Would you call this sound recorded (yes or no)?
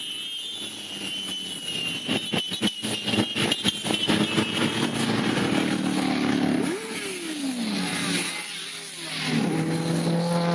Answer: yes